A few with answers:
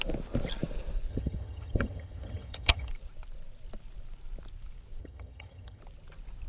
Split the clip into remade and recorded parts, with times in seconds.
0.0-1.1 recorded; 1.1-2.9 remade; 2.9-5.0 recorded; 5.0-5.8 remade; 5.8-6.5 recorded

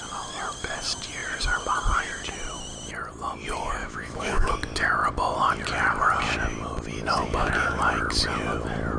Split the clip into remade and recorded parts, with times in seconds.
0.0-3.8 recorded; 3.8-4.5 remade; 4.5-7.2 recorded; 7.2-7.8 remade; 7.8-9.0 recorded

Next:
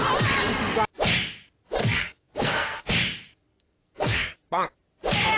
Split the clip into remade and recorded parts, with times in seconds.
0.0-1.8 recorded; 1.8-2.9 remade; 2.9-3.5 recorded; 3.5-4.4 remade; 4.4-5.4 recorded

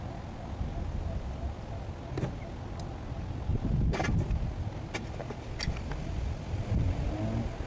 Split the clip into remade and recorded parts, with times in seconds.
0.0-7.7 recorded

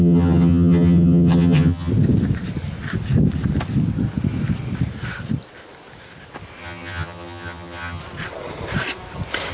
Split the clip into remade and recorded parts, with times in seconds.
0.0-1.9 remade; 1.9-6.6 recorded; 6.6-8.0 remade; 8.0-9.5 recorded